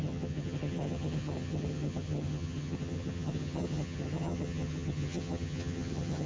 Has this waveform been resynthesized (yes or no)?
yes